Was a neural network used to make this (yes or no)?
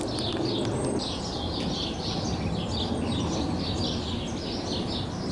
no